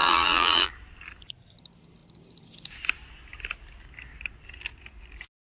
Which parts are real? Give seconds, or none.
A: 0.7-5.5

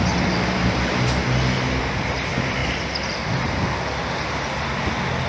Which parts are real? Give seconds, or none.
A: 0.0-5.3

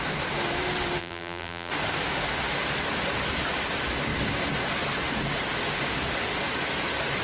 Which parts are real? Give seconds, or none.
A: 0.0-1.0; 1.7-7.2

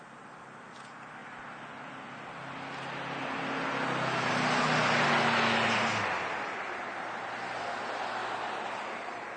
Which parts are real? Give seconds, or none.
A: 0.0-9.4

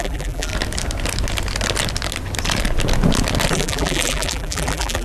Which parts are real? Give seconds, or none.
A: 0.5-3.5